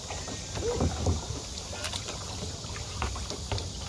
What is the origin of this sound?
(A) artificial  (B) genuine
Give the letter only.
A